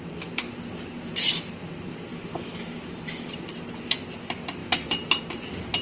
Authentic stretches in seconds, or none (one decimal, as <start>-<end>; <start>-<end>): 0.0-2.1; 3.3-5.8

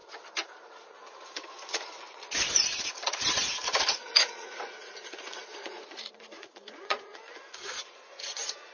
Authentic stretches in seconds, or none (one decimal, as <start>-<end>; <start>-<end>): 0.0-0.6

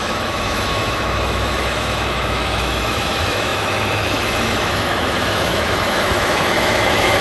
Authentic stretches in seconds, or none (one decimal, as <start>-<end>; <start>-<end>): none

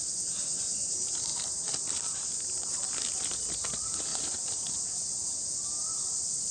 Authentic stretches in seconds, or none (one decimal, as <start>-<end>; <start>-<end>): 0.0-6.5